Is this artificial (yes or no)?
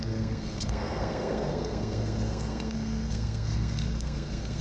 yes